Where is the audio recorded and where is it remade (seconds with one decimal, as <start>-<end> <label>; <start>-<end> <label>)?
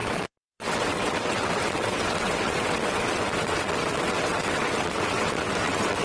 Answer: 0.0-6.0 remade